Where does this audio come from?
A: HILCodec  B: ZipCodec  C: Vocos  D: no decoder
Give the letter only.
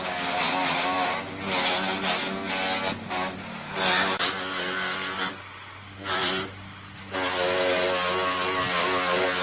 D